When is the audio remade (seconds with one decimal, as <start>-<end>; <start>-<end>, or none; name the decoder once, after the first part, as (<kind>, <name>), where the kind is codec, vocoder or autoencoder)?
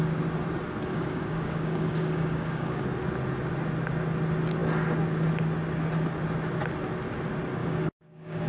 0.9-2.8 (codec, DAC); 7.6-8.5